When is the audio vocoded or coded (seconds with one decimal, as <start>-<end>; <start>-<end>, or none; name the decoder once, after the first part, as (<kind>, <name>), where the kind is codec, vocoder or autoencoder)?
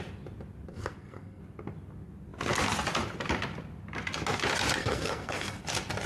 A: 0.7-1.4 (codec, SNAC); 4.8-5.6